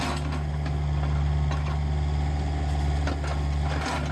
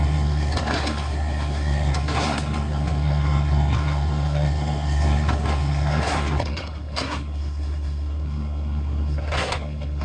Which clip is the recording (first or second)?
first